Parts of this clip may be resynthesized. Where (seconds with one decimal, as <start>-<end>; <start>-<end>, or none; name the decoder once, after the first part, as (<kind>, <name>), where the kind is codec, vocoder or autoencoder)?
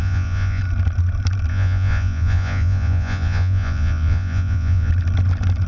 0.0-0.6 (vocoder, Vocos); 1.5-4.9